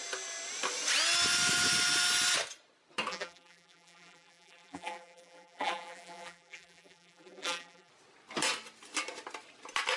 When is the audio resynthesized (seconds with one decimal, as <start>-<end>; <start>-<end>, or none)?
3.1-7.9

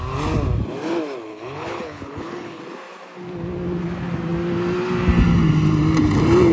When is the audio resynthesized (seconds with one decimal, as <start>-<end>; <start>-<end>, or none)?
1.3-2.6

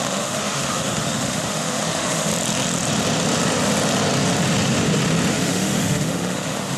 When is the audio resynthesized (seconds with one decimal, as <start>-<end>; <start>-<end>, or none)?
0.0-2.3; 5.3-6.8